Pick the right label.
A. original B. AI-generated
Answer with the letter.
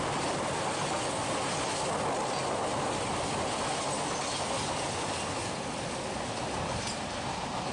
A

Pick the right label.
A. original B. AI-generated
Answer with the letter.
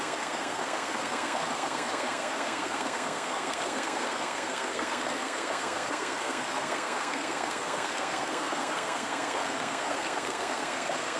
B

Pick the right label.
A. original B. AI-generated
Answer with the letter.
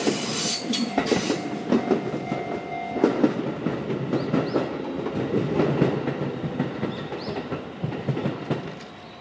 A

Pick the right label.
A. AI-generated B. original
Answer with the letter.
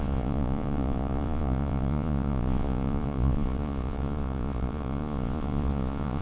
A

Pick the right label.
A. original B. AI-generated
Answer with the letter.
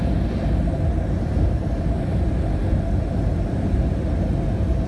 A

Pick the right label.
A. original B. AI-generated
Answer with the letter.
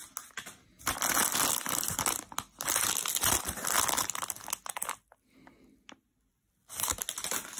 A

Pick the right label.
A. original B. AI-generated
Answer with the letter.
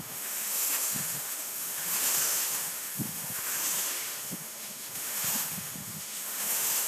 B